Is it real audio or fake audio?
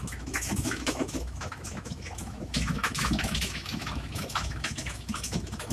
fake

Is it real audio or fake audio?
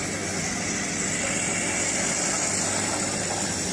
real